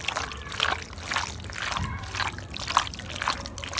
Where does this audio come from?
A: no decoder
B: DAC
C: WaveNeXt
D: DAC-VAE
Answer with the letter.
A